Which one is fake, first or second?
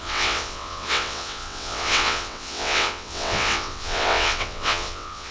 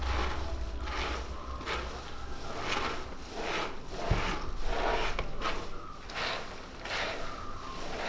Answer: first